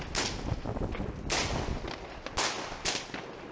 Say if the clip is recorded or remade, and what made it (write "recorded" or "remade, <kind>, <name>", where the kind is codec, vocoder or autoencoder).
recorded